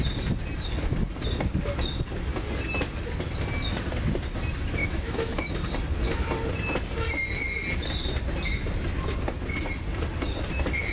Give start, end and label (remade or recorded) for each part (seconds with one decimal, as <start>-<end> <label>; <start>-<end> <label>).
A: 0.0-4.8 recorded; 4.8-5.4 remade; 5.4-10.9 recorded